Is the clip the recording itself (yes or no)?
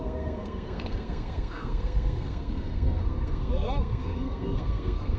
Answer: no